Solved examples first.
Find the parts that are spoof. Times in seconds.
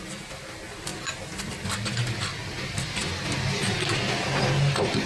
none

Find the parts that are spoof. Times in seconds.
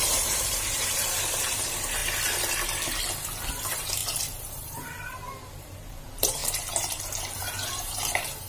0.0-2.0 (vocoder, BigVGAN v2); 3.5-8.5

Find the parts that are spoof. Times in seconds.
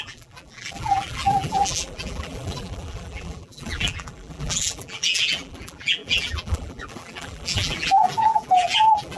0.0-9.2 (vocoder, BigVGAN v2)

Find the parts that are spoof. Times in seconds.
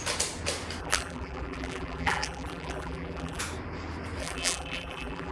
0.8-3.4 (vocoder, BigVGAN v2); 4.2-5.3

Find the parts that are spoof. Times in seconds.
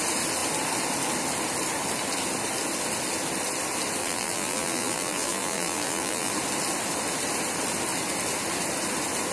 4.0-6.3 (vocoder, BigVGAN v2)